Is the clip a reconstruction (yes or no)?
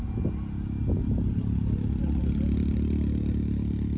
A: no